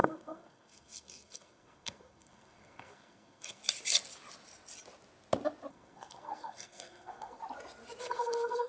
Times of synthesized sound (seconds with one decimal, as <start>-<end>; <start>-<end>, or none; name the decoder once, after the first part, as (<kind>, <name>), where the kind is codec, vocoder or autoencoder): 0.0-3.6 (codec, SNAC); 5.7-7.4; 8.0-8.7